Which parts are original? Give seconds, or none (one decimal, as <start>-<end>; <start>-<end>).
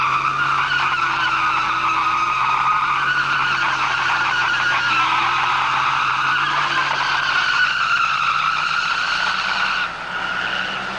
0.0-11.0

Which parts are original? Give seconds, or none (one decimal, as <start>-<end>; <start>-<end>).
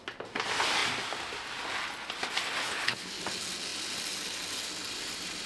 0.0-2.6; 3.2-5.5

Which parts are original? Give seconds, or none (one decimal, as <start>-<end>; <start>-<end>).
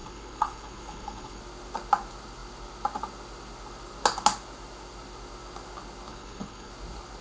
1.4-6.1; 6.7-7.2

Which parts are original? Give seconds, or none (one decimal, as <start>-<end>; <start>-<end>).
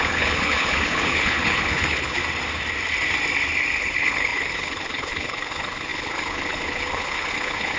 2.2-3.8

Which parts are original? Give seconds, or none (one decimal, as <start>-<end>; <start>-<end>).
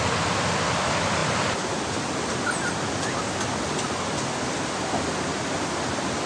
0.0-6.3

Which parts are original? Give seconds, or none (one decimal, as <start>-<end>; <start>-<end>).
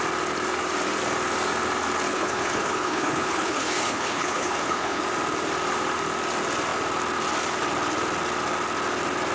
0.0-2.1; 5.0-9.3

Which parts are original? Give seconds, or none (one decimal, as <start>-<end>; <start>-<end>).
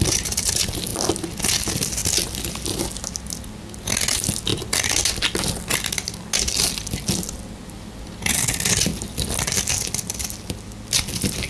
0.0-11.5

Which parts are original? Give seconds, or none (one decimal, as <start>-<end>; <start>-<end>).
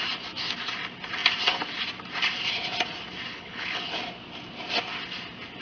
0.0-3.3; 3.9-5.6